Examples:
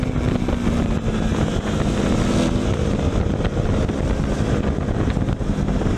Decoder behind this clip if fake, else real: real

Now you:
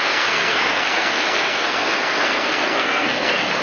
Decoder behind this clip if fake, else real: fake, codec, SNAC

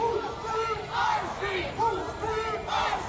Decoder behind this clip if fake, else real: real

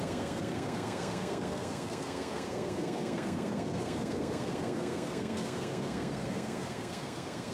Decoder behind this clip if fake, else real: fake, codec, SNAC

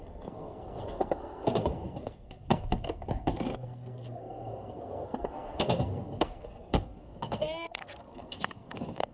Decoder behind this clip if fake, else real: fake, codec, SNAC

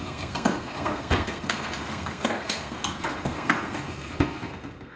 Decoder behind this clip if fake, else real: fake, codec, SNAC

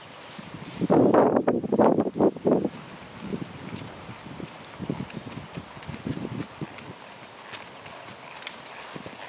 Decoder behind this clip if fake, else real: real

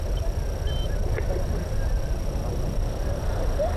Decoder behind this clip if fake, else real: real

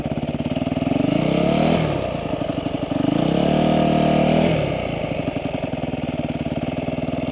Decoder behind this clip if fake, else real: real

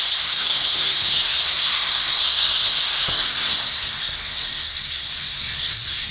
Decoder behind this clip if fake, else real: fake, codec, SNAC